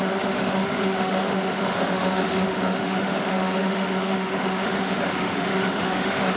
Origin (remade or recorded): remade